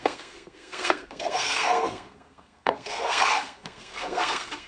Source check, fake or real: fake